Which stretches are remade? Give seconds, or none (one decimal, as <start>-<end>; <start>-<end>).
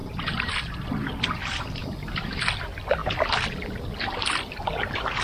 0.0-0.5; 1.8-2.4